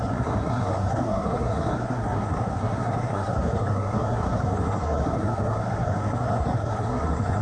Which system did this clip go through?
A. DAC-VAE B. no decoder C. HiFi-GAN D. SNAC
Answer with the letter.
D